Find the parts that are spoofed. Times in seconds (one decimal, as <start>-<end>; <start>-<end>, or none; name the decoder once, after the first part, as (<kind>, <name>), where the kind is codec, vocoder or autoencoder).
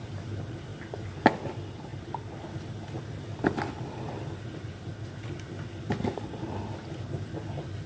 none